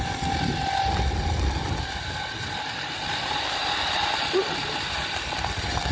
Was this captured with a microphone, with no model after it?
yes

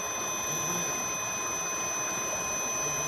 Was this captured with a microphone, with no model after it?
yes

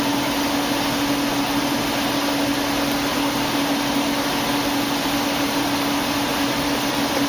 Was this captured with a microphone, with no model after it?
yes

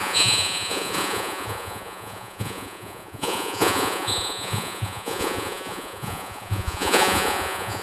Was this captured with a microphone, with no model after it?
no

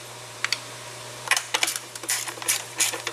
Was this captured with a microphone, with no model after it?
no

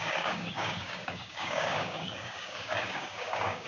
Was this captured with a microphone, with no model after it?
no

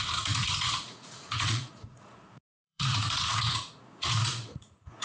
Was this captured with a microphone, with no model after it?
no